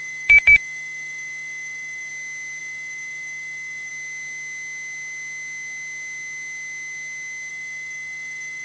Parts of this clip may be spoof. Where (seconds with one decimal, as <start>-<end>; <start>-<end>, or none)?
0.0-2.1; 2.6-3.9; 7.5-8.6